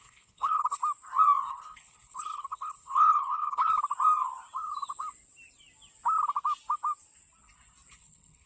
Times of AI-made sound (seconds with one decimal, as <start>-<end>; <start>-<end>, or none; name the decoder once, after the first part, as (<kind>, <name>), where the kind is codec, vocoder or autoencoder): 0.0-0.8 (codec, HILCodec); 1.5-3.7; 7.9-8.5